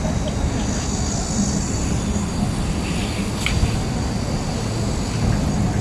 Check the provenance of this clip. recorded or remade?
recorded